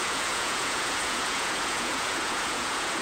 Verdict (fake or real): fake